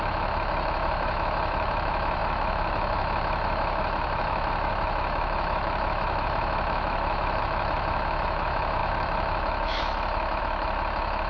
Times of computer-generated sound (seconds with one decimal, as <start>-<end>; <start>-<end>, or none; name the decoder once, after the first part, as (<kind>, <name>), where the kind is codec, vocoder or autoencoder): 0.0-11.3 (autoencoder, DAC-VAE)